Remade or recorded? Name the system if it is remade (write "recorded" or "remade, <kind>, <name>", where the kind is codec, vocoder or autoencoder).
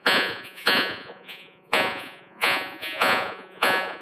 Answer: remade, vocoder, Vocos